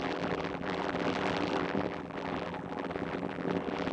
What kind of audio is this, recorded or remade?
remade